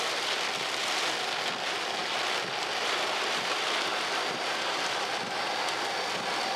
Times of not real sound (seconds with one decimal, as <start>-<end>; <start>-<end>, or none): 2.0-4.5